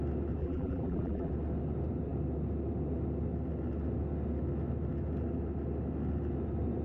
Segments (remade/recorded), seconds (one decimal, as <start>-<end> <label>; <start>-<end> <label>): 0.0-0.4 recorded; 0.4-1.3 remade; 1.3-6.8 recorded

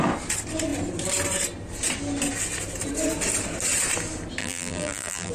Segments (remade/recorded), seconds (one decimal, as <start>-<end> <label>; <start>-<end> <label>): 0.0-4.4 recorded; 4.4-5.3 remade

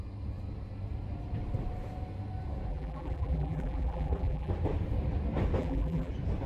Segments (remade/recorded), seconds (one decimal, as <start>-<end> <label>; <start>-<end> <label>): 0.0-2.7 recorded; 2.7-4.5 remade; 4.5-5.6 recorded; 5.6-6.1 remade; 6.1-6.5 recorded

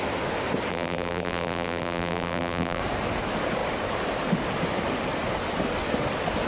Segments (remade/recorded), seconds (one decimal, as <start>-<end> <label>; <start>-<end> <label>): 0.0-0.7 recorded; 0.7-2.8 remade; 2.8-6.5 recorded

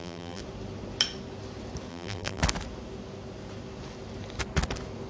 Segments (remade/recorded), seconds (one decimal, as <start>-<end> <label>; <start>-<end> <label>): 0.0-0.4 remade; 0.4-1.9 recorded; 1.9-2.4 remade; 2.4-5.1 recorded

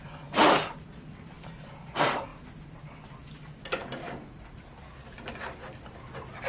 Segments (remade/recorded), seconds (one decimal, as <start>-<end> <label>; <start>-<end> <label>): 0.0-2.3 recorded; 2.3-2.9 remade; 2.9-3.8 recorded; 3.8-5.4 remade; 5.4-6.5 recorded